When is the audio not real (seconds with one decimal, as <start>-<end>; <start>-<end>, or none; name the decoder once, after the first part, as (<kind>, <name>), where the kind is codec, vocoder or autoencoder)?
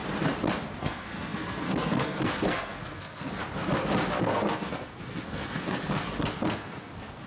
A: 0.8-3.4 (codec, SNAC); 4.2-7.3